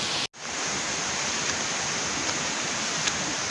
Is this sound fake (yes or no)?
no